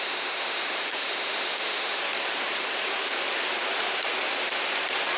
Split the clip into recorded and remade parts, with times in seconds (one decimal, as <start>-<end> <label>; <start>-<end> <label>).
0.0-2.0 remade; 2.0-5.2 recorded